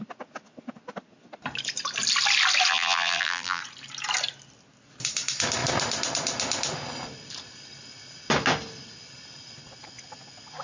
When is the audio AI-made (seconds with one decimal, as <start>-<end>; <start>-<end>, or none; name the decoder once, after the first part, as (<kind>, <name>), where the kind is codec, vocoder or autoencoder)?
2.7-3.6 (vocoder, BigVGAN v2)